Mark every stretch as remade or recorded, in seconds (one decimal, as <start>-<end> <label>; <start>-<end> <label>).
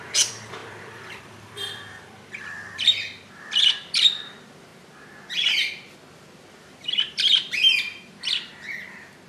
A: 0.0-4.7 remade; 4.7-6.5 recorded; 6.5-8.5 remade; 8.5-9.3 recorded